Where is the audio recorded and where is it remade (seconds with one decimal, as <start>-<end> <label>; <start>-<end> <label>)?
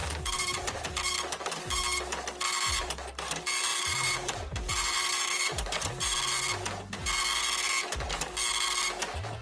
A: 0.0-1.0 remade; 1.0-3.7 recorded; 3.7-5.7 remade; 5.7-9.4 recorded